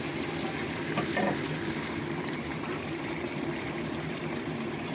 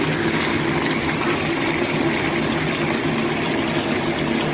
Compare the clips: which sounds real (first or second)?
second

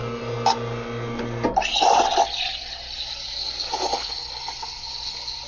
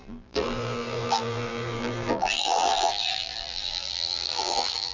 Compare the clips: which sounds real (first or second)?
first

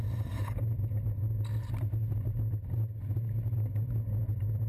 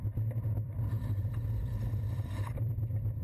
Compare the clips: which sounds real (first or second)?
first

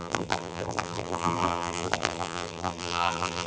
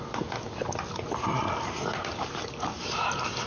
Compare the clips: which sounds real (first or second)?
second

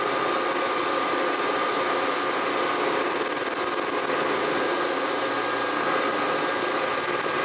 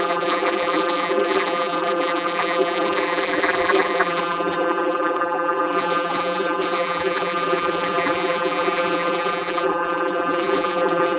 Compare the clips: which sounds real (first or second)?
first